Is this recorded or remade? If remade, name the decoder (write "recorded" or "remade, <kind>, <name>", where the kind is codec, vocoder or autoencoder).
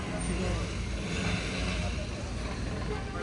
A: recorded